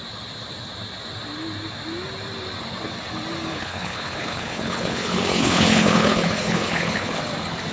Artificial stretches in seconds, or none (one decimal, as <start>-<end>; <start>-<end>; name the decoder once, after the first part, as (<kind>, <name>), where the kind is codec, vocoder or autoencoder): 3.5-7.2 (codec, HILCodec)

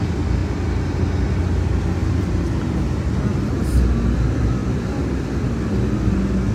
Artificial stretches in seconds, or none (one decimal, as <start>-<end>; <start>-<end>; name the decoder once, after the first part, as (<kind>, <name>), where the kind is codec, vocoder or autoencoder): 2.0-4.0 (vocoder, BigVGAN v2)

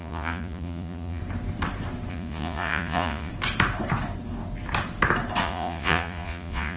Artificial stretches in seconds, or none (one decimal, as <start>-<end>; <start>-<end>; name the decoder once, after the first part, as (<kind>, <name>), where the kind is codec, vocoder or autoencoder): 0.0-1.2 (vocoder, Vocos); 2.1-3.3; 5.4-6.8

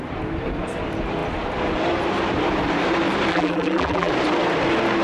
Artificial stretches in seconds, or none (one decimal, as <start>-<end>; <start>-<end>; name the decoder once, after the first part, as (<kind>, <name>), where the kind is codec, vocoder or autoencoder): 3.3-4.1 (vocoder, BigVGAN v2)

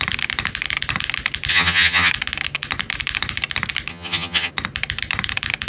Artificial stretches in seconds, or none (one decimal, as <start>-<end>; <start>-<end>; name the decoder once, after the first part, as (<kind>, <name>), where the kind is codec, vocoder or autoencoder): 1.5-2.1 (vocoder, HiFi-GAN); 3.9-4.5

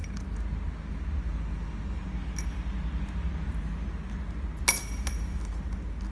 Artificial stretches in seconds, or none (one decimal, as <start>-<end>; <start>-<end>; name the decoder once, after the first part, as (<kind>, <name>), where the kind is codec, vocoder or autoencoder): none